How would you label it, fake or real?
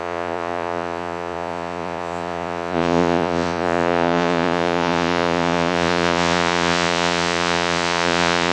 fake